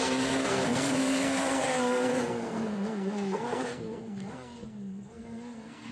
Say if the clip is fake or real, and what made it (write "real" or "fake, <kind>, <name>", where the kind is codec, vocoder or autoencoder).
fake, codec, SNAC